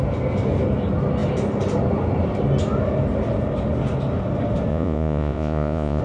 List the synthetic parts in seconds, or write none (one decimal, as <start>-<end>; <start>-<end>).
4.7-6.0